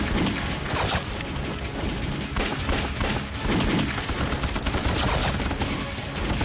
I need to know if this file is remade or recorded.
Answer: recorded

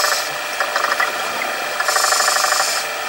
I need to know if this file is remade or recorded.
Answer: recorded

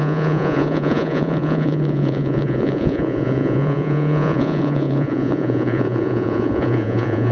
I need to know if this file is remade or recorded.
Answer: remade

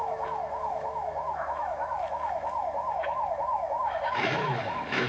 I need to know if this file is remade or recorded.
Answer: remade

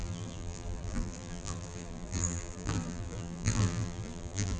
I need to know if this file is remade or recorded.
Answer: remade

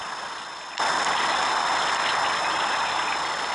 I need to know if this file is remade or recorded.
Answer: recorded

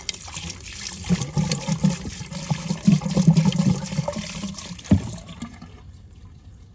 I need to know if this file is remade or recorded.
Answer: recorded